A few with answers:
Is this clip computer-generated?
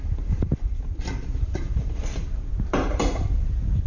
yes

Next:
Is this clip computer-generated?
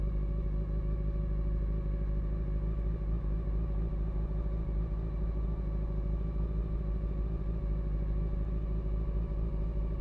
no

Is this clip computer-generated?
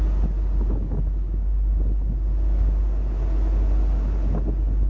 no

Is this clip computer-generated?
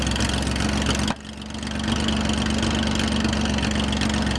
no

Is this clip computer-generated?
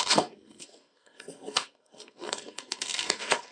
yes